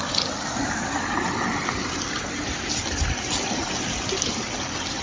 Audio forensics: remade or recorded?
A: recorded